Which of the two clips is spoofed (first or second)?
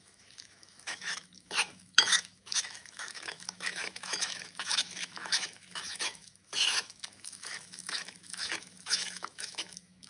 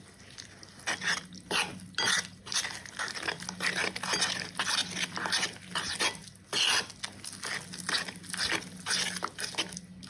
first